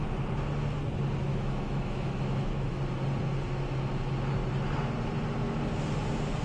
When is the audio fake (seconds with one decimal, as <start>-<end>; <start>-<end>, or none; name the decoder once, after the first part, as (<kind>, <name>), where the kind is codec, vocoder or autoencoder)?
1.3-2.8 (autoencoder, DAC-VAE)